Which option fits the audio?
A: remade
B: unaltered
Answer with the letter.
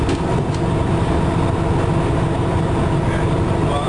B